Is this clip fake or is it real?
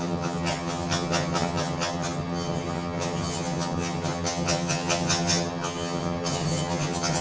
fake